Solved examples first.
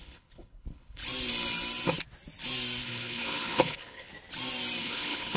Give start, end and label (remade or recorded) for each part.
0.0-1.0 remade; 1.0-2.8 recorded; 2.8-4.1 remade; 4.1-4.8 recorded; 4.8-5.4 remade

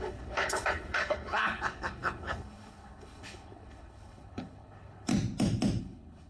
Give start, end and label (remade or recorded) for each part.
0.0-5.1 remade; 5.1-5.8 recorded; 5.8-6.3 remade

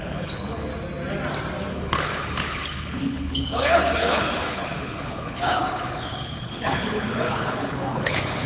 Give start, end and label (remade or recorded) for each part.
0.0-0.7 remade; 0.7-1.7 recorded; 1.7-8.5 remade

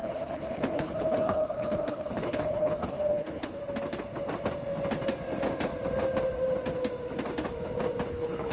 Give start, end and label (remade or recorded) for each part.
0.0-3.6 remade; 3.6-8.1 recorded; 8.1-8.5 remade

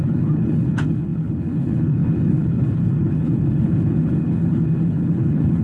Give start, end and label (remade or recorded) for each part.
0.0-5.6 remade

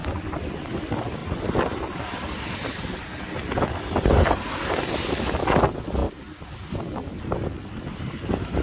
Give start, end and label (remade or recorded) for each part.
0.0-8.6 recorded

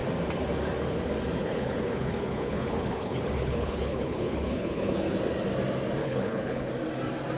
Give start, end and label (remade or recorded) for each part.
0.0-1.4 recorded; 1.4-5.0 remade; 5.0-6.0 recorded; 6.0-6.7 remade; 6.7-7.4 recorded